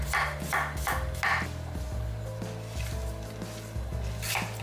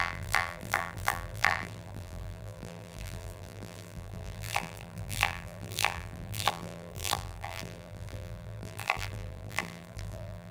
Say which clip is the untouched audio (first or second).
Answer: first